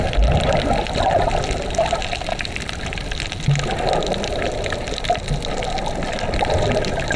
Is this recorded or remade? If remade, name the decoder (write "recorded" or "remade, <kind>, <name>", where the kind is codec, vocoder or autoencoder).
recorded